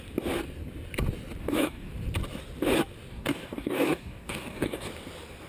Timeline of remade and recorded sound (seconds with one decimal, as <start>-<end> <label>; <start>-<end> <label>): 0.0-1.4 recorded; 1.4-1.9 remade; 1.9-3.1 recorded; 3.1-4.9 remade; 4.9-5.5 recorded